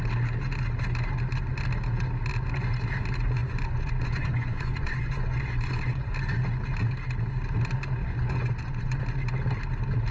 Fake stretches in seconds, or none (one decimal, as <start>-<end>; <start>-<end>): 3.4-6.1; 8.0-9.0